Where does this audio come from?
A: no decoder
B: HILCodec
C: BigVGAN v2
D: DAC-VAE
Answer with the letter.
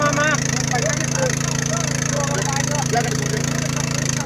A